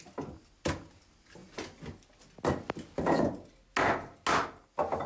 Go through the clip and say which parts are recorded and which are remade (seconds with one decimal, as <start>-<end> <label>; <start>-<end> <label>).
0.0-5.1 recorded